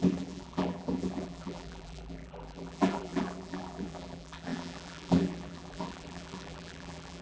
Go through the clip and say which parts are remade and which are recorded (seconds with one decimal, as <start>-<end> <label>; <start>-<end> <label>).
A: 0.0-7.2 remade